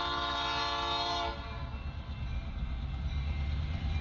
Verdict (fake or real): real